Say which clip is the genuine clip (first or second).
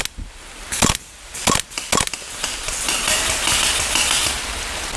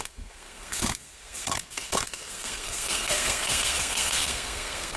first